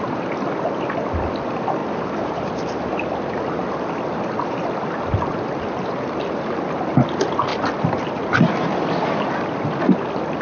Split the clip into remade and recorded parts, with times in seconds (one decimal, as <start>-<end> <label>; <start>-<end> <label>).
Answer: 0.0-10.4 recorded